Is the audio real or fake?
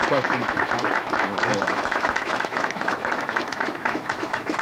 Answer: fake